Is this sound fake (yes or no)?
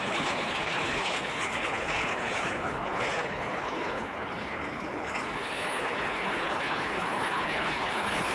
yes